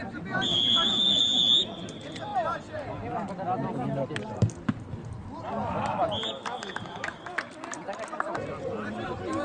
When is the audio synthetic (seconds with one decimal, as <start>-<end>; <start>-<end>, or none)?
0.5-1.2; 6.6-7.3